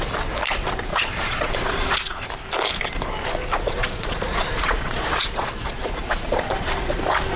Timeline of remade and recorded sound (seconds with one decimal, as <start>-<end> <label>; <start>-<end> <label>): 0.0-0.9 recorded; 0.9-2.3 remade; 2.3-3.5 recorded; 3.5-7.0 remade; 7.0-7.4 recorded